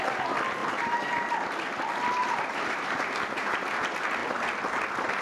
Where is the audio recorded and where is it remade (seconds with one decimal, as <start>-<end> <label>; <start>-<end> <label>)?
0.0-0.6 recorded; 0.6-1.3 remade; 1.3-2.2 recorded; 2.2-3.6 remade; 3.6-5.2 recorded